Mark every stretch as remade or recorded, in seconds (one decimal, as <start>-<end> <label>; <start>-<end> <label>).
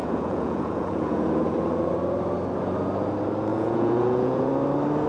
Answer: 0.0-1.9 remade; 1.9-3.5 recorded; 3.5-4.5 remade; 4.5-5.1 recorded